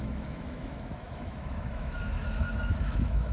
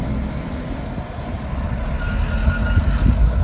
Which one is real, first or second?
second